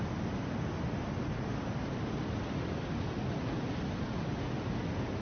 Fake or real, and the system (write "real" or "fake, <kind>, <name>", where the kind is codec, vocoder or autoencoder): real